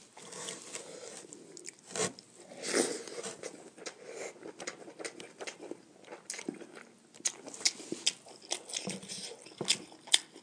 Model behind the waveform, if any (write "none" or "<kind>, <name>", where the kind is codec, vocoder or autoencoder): none